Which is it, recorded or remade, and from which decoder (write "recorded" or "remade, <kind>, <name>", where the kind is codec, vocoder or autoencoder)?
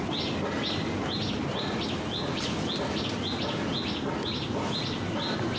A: recorded